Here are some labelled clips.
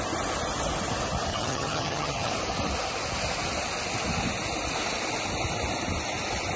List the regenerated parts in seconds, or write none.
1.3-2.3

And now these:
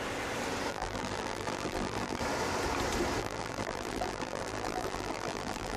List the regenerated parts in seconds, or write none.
0.7-2.2; 3.2-5.8

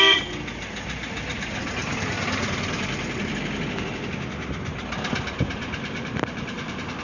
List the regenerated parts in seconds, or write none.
none

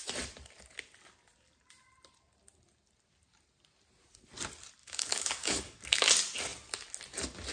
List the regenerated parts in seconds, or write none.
4.8-6.1